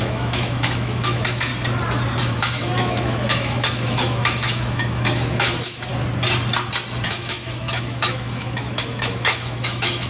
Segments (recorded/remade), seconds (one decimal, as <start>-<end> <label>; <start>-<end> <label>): 0.0-1.5 remade; 1.5-2.3 recorded; 2.3-5.9 remade; 5.9-7.1 recorded; 7.1-10.1 remade